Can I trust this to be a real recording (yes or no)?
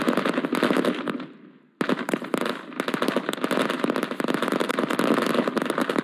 yes